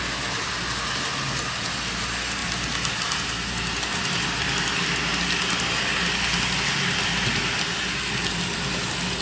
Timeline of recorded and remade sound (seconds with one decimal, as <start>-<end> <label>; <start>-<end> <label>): 0.0-9.2 recorded